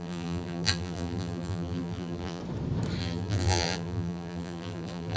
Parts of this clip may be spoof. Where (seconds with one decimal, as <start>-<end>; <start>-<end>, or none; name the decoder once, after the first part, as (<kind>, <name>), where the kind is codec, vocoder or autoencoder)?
0.0-2.4 (vocoder, BigVGAN v2); 3.0-5.2